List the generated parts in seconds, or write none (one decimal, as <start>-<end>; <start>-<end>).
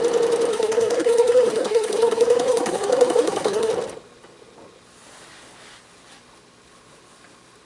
0.5-3.7